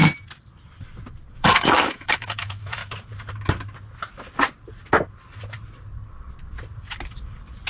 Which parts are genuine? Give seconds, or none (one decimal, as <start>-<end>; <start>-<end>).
0.0-1.3; 2.8-7.7